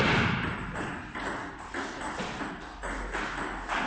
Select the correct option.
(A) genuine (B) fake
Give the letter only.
A